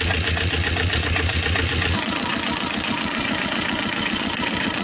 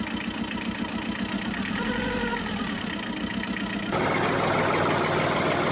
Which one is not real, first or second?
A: first